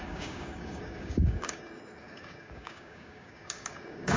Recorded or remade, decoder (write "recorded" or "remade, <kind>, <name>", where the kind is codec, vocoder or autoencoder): remade, codec, DAC